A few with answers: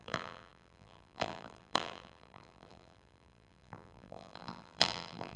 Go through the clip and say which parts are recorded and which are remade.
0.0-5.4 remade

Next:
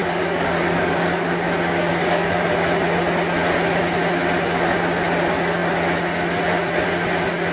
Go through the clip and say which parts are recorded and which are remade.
0.0-1.5 remade; 1.5-1.9 recorded; 1.9-2.4 remade; 2.4-7.5 recorded